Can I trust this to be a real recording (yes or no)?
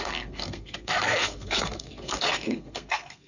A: no